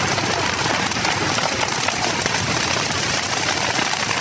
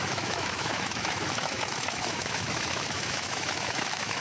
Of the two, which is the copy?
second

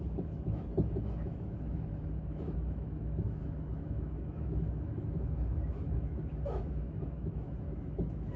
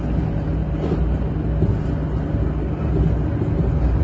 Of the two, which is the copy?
first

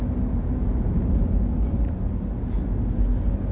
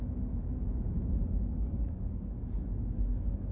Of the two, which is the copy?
second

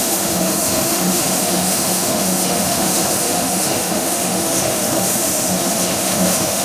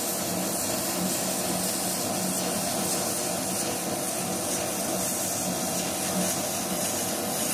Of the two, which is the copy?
first